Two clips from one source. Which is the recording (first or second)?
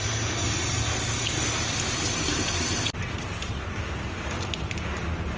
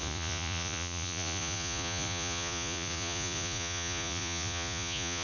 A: first